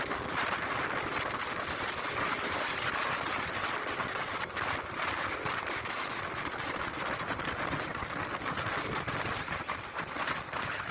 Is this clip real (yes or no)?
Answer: yes